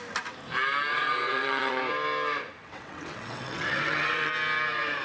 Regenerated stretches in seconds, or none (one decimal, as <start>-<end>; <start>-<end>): 0.9-1.8; 2.6-4.3